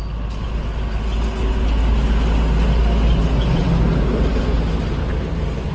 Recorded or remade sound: recorded